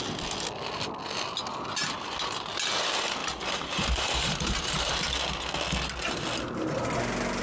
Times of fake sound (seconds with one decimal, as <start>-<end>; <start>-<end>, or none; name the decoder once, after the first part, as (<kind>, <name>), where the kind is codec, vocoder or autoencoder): 3.2-4.9 (vocoder, BigVGAN v2)